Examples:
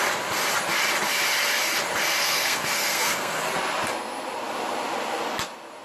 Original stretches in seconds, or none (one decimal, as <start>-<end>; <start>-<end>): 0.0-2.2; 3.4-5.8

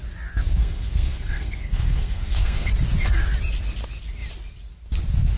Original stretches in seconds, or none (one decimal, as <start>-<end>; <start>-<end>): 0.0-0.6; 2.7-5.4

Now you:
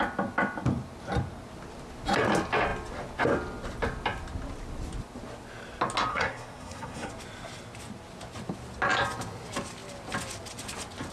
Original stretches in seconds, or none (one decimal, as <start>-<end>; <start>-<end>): 0.0-6.1; 7.1-11.1